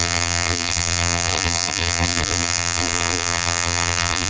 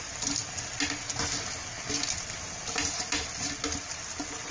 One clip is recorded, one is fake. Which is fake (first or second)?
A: first